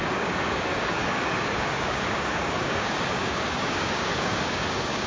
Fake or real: fake